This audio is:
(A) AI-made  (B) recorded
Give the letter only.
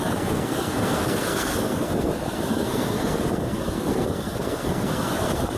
A